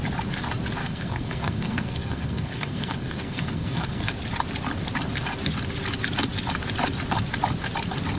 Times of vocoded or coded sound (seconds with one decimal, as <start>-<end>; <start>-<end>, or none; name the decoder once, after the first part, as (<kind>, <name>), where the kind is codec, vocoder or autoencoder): 0.8-4.1 (codec, SNAC)